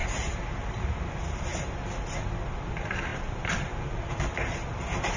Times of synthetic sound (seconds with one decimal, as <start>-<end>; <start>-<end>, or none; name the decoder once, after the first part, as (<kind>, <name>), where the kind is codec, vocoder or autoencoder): 0.9-1.5 (vocoder, BigVGAN v2); 2.7-5.2